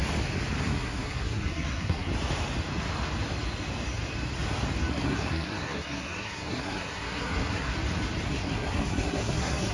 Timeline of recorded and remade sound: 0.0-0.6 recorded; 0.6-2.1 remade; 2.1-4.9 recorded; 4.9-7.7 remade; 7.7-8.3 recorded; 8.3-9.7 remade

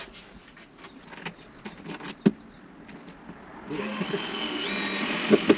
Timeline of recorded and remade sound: 0.0-5.6 recorded

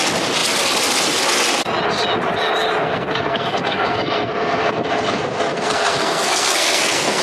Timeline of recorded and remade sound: 0.0-2.8 recorded; 2.8-7.2 remade

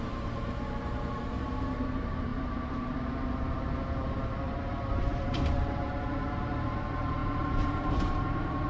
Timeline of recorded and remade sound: 0.0-8.7 remade

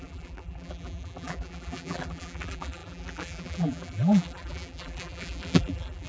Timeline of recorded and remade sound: 0.0-6.1 remade

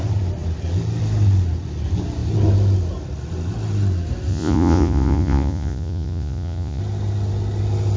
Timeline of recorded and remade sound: 0.0-4.3 recorded; 4.3-6.8 remade; 6.8-8.0 recorded

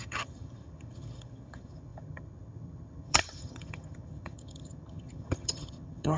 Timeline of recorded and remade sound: 0.0-6.2 remade